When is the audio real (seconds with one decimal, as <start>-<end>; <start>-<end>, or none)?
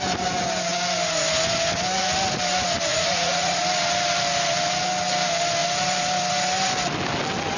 0.0-2.9; 3.6-7.6